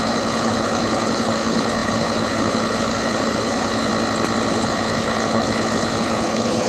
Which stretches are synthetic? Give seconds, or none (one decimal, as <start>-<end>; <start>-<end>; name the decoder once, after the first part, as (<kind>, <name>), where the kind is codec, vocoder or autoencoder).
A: 0.0-3.9 (codec, HILCodec); 4.5-6.7